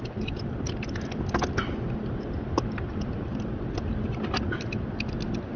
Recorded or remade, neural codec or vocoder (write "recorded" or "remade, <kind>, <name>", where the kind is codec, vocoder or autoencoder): recorded